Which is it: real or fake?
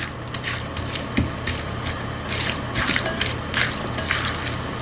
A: real